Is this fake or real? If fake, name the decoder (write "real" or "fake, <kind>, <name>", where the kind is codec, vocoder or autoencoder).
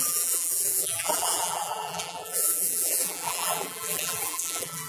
fake, vocoder, BigVGAN v2